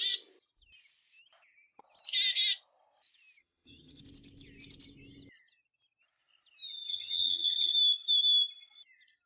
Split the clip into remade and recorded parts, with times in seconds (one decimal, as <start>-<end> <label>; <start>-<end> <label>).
0.0-3.4 recorded; 3.4-4.0 remade; 4.0-6.9 recorded; 6.9-7.7 remade; 7.7-9.3 recorded